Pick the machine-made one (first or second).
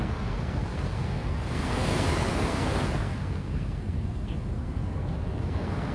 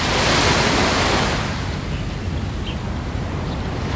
first